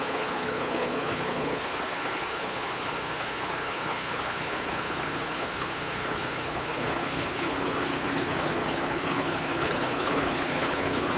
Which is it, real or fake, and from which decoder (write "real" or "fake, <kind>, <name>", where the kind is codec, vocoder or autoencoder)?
fake, codec, HILCodec